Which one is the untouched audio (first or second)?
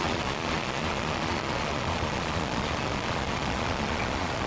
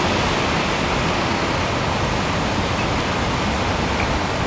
second